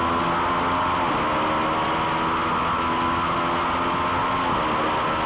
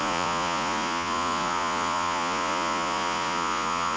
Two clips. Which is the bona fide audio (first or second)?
first